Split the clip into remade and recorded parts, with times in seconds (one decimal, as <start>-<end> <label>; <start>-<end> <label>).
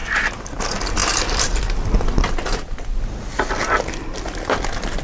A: 0.0-5.0 recorded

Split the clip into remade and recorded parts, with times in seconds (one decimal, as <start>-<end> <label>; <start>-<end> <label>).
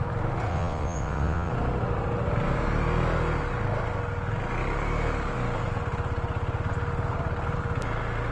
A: 0.0-0.5 recorded; 0.5-1.5 remade; 1.5-8.3 recorded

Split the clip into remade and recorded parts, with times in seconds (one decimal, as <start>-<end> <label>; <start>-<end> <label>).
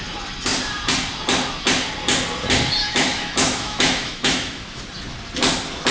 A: 0.0-2.8 recorded; 2.8-4.8 remade; 4.8-5.9 recorded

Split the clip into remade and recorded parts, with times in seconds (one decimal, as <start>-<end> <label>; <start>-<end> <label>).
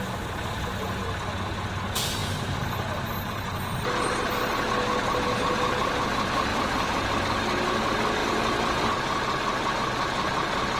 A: 0.0-6.5 recorded; 6.5-7.1 remade; 7.1-10.8 recorded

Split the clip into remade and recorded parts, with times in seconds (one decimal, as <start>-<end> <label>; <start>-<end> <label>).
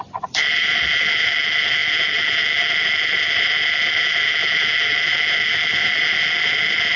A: 0.0-7.0 remade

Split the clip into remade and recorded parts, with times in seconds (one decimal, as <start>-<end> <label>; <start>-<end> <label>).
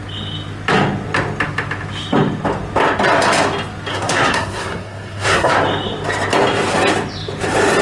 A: 0.0-3.9 recorded; 3.9-5.5 remade; 5.5-7.8 recorded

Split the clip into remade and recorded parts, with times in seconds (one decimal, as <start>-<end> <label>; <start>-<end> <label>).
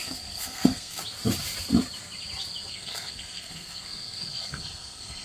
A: 0.0-1.0 remade; 1.0-2.7 recorded; 2.7-5.2 remade